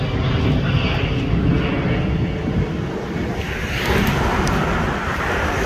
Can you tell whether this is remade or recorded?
recorded